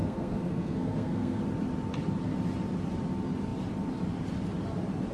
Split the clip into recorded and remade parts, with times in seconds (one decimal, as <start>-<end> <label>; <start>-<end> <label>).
0.0-1.4 remade; 1.4-5.1 recorded